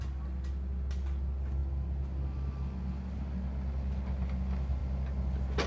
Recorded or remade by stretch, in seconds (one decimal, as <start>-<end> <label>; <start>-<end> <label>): 0.0-5.7 recorded